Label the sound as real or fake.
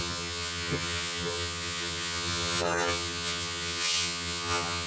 fake